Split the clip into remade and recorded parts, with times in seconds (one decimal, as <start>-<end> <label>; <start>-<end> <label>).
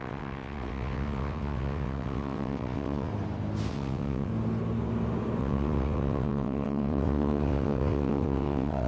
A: 0.0-3.1 remade; 3.1-3.7 recorded; 3.7-4.3 remade; 4.3-5.4 recorded; 5.4-8.9 remade